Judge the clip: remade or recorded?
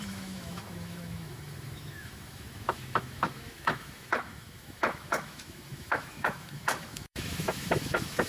remade